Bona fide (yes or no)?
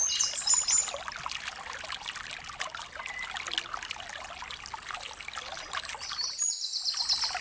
yes